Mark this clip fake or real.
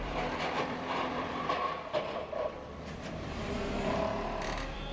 fake